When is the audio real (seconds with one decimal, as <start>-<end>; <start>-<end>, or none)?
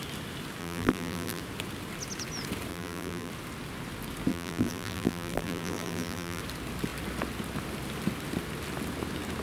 0.0-0.6; 1.4-2.7; 3.3-4.3; 6.4-9.4